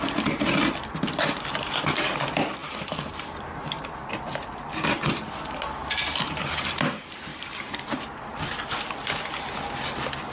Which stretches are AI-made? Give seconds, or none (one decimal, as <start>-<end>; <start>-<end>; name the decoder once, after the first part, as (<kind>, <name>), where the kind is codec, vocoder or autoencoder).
2.6-3.9 (vocoder, BigVGAN v2); 7.3-8.8

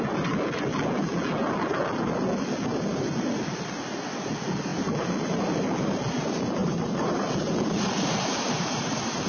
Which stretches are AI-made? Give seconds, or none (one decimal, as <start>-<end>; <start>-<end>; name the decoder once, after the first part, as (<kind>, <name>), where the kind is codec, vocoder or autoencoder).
6.6-7.3 (vocoder, BigVGAN v2)

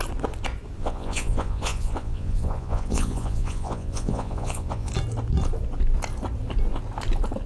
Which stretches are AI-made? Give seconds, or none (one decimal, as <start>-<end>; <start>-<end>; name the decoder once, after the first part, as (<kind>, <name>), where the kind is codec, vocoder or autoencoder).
0.8-4.9 (vocoder, Vocos)

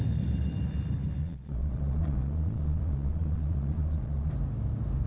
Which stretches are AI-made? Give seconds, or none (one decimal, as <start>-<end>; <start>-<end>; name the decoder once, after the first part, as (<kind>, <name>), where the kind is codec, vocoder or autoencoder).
1.2-4.3 (vocoder, Vocos)

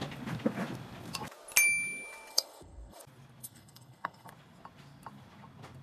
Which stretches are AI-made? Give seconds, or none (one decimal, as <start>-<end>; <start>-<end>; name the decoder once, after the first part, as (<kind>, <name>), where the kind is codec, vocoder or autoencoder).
2.3-3.0 (codec, SNAC); 3.4-4.3